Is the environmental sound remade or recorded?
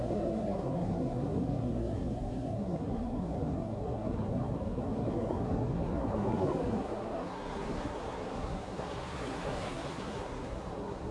remade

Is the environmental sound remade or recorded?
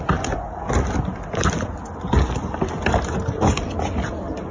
recorded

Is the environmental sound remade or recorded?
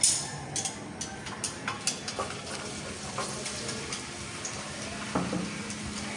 recorded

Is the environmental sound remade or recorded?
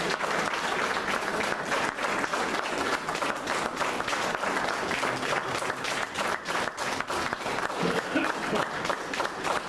recorded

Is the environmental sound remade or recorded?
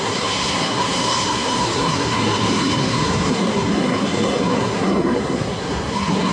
remade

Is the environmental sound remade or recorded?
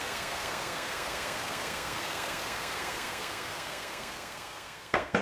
remade